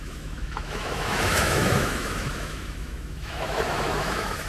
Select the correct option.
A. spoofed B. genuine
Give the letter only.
A